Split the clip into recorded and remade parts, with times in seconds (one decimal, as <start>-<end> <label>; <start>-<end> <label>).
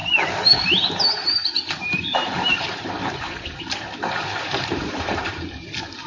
0.0-6.1 remade